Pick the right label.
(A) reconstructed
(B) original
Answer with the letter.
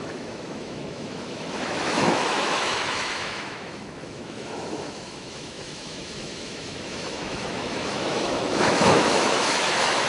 A